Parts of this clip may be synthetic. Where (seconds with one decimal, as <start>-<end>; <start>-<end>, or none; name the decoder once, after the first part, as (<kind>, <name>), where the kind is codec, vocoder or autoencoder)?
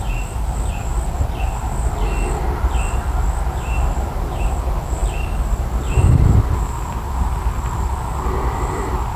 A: none